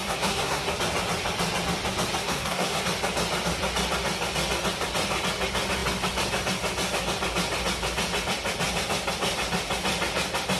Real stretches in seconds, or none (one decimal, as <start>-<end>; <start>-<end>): 0.7-2.2; 2.8-10.6